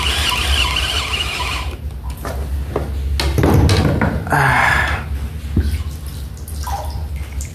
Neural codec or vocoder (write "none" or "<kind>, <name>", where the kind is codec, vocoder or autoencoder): none